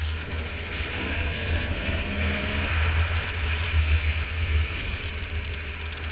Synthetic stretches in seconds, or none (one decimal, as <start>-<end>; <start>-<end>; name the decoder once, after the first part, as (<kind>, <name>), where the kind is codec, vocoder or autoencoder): 0.0-2.5 (codec, SNAC); 3.8-5.0